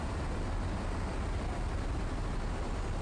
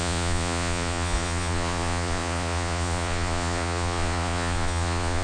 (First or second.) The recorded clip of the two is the first